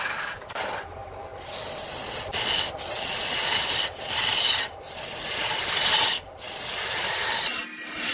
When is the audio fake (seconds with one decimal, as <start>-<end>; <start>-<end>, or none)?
none